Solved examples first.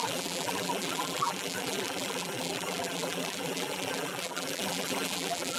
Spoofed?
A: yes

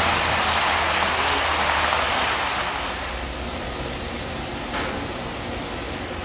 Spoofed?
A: no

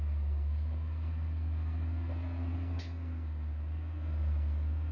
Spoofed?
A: yes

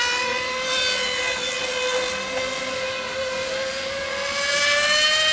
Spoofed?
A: no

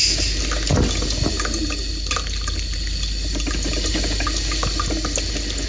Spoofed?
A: no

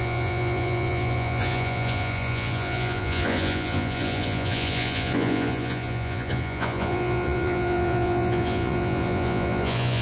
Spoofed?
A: yes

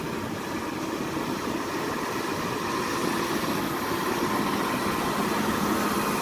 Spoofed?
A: no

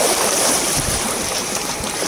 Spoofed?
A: yes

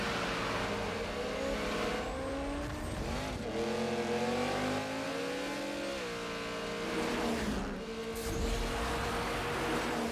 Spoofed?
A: no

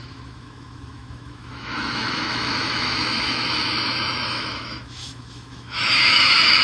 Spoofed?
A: yes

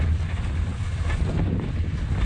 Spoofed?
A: no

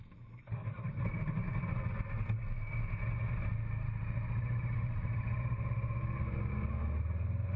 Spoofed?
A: no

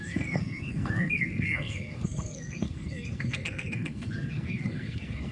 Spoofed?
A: yes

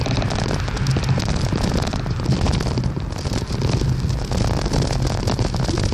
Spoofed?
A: no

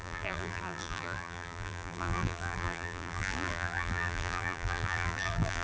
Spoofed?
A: yes